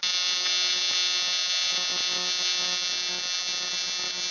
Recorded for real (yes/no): yes